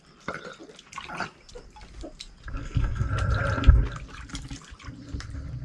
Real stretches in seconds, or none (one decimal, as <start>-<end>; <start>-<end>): 0.0-2.6; 3.1-5.6